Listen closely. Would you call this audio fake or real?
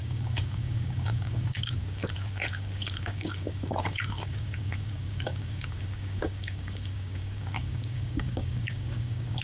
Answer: fake